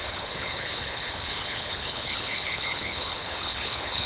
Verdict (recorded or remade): remade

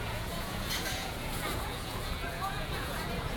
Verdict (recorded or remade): remade